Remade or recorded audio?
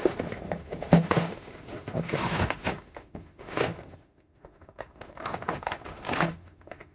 remade